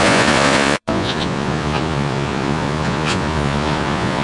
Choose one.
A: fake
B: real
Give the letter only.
A